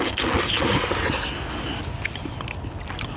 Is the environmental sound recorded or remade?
recorded